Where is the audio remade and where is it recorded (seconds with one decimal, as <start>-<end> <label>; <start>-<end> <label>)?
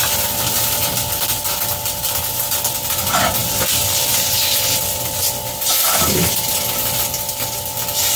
0.0-8.2 recorded